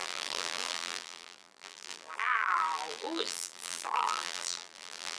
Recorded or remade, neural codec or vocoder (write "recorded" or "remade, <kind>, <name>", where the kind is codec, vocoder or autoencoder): remade, vocoder, BigVGAN v2